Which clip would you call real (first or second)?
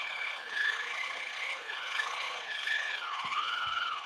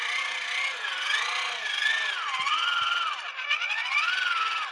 second